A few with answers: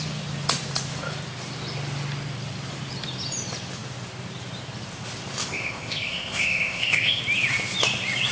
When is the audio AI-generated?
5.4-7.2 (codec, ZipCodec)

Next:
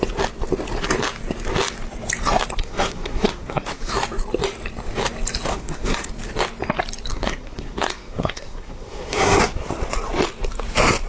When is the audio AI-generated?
2.6-3.9 (codec, SNAC); 5.5-6.1; 7.1-9.7